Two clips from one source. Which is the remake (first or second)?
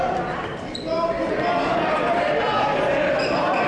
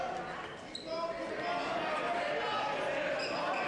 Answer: first